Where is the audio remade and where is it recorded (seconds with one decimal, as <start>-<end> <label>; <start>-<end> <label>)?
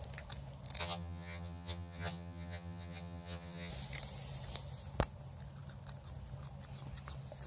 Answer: 0.0-0.8 recorded; 0.8-3.7 remade; 3.7-7.5 recorded